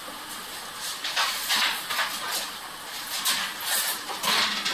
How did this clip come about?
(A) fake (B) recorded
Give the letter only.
B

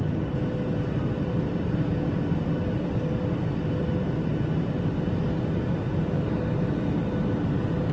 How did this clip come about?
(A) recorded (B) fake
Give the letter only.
A